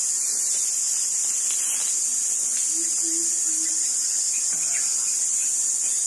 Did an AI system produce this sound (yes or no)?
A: no